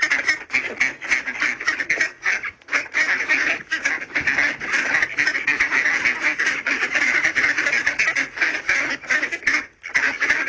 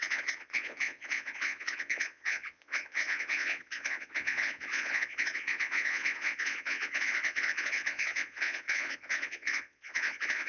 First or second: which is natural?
first